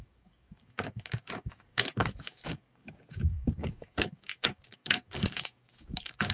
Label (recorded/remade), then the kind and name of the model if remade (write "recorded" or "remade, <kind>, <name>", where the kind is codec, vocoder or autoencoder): remade, codec, DAC